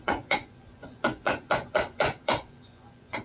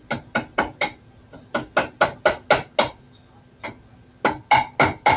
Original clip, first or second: second